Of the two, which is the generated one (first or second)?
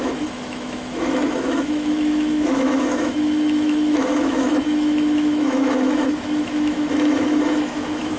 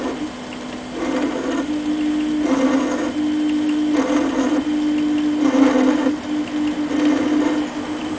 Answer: first